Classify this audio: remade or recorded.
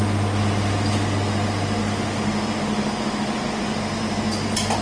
recorded